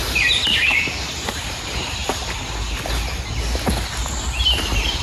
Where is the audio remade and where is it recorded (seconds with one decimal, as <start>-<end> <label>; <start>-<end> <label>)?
0.0-1.1 recorded; 1.1-2.0 remade; 2.0-5.0 recorded